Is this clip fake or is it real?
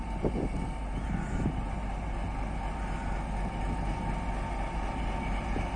real